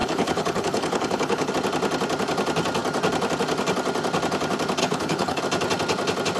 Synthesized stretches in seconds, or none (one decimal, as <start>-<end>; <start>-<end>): 0.0-1.5; 4.8-5.4